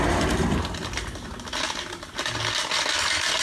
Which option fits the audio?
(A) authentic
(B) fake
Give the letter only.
A